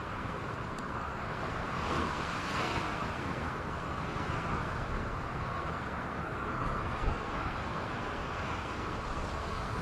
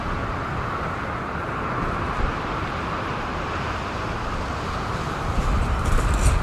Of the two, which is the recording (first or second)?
second